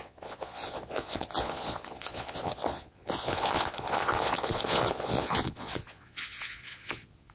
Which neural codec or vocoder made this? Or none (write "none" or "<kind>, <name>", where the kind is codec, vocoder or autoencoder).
vocoder, Vocos